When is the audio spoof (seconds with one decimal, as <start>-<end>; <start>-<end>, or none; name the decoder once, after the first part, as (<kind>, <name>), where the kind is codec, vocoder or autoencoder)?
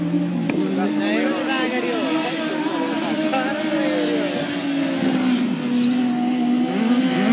none